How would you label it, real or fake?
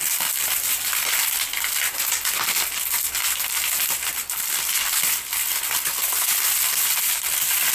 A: real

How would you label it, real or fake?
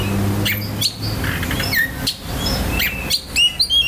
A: real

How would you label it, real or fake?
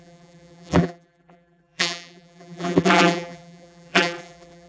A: fake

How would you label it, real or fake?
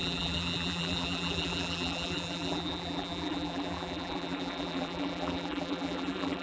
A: fake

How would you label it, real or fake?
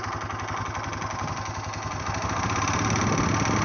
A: real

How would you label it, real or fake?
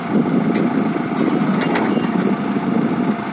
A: real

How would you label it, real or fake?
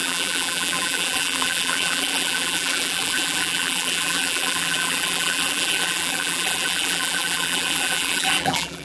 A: fake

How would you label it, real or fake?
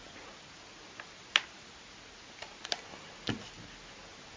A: real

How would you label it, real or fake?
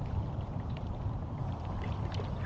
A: fake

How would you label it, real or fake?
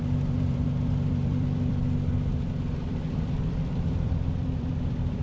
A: fake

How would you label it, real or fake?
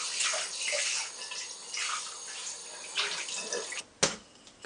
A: real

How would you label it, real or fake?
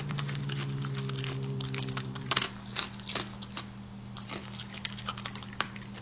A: fake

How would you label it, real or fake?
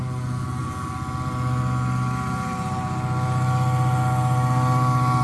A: real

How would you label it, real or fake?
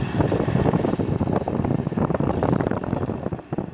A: fake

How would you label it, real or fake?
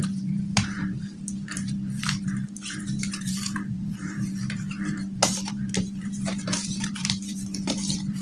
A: fake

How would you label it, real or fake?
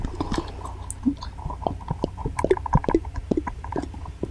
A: real